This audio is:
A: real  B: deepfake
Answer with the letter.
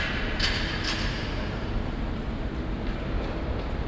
B